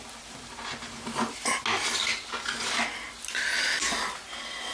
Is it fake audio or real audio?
real